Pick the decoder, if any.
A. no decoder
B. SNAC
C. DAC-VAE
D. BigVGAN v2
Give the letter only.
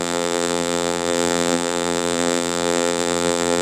D